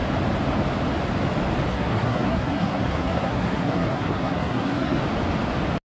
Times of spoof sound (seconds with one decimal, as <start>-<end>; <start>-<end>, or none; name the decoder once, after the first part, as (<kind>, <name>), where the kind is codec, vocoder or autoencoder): 1.7-5.0 (codec, SNAC)